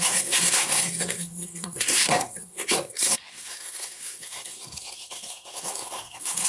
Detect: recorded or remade remade